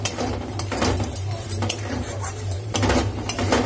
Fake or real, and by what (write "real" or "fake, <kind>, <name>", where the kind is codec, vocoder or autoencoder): fake, vocoder, BigVGAN v2